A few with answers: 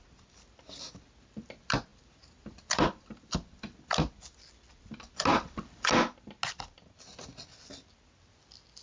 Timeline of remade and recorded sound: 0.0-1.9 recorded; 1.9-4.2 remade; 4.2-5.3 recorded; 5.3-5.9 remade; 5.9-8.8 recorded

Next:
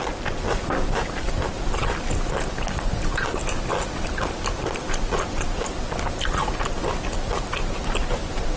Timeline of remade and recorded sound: 0.0-8.6 recorded

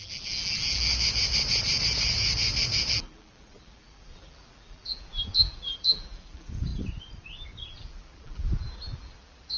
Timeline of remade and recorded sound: 0.0-0.9 remade; 0.9-2.9 recorded; 2.9-6.7 remade; 6.7-7.7 recorded; 7.7-9.6 remade

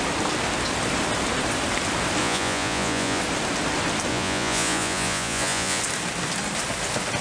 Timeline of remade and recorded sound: 0.0-2.2 recorded; 2.2-3.2 remade; 3.2-4.1 recorded; 4.1-5.8 remade; 5.8-7.2 recorded

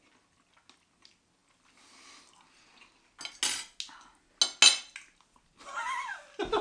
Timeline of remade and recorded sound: 0.0-6.6 recorded